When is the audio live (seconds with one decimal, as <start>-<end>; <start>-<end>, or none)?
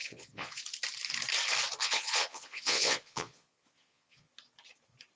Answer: 0.6-1.8; 4.3-5.2